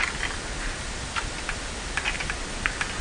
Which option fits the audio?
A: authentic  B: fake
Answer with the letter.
A